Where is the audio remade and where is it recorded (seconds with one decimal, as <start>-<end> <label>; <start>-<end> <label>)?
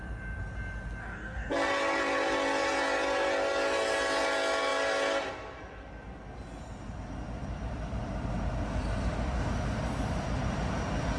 0.0-1.0 recorded; 1.0-1.5 remade; 1.5-11.2 recorded